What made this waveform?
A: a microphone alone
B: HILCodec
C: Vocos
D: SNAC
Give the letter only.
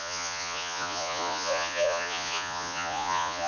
C